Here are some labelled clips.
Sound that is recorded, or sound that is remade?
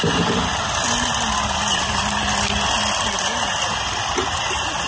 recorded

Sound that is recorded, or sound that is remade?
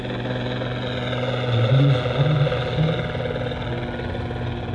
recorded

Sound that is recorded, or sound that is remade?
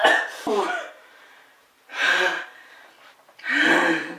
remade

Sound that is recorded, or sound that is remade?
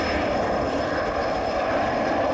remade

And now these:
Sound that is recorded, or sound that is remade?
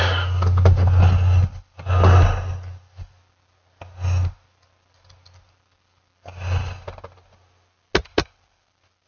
recorded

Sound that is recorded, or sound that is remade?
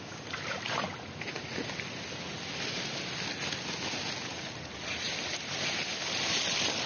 recorded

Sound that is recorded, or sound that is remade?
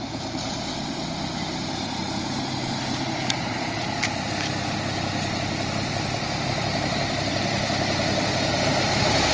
remade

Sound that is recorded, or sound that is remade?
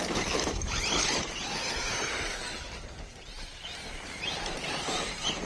remade